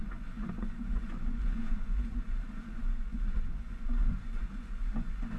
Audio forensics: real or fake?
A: fake